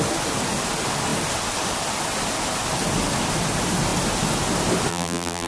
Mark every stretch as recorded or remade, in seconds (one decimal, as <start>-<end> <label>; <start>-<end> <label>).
0.0-4.9 recorded; 4.9-5.5 remade